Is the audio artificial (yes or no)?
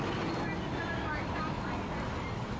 no